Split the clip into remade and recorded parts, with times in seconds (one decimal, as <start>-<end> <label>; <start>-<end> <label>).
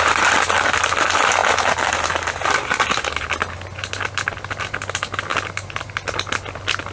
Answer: 0.0-6.9 recorded